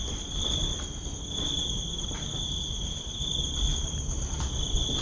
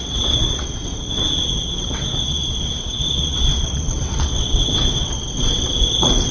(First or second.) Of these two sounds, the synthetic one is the second